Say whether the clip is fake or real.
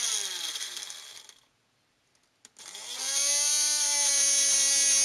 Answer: real